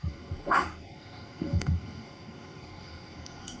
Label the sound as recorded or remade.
remade